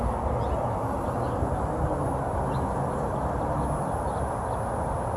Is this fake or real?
real